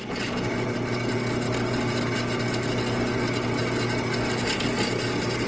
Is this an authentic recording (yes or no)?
yes